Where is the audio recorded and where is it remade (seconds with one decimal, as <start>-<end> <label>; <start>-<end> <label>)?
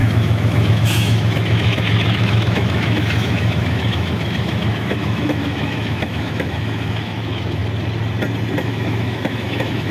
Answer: 0.0-7.6 remade; 7.6-8.6 recorded; 8.6-9.9 remade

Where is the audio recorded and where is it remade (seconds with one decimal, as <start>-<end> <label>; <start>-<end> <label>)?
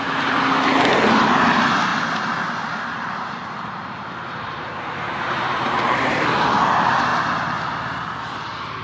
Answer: 0.0-1.9 recorded; 1.9-6.2 remade; 6.2-8.8 recorded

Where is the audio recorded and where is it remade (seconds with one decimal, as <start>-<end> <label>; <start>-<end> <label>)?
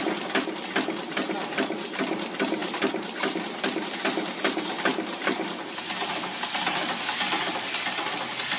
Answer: 0.0-8.6 recorded